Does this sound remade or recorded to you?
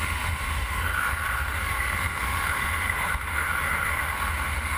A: remade